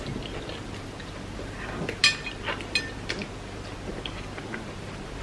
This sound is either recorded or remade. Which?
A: recorded